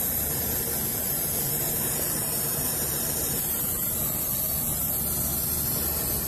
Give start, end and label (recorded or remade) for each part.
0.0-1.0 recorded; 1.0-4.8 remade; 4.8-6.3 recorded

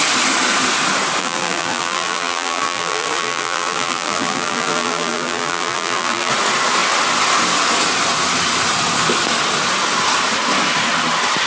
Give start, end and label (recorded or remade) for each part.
0.0-1.2 recorded; 1.2-6.3 remade; 6.3-11.5 recorded